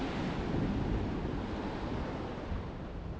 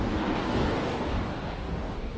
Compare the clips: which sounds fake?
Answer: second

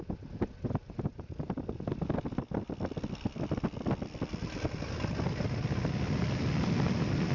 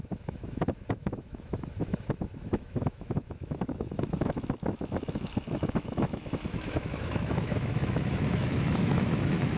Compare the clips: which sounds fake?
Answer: second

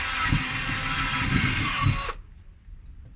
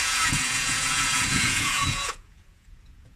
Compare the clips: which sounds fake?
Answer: second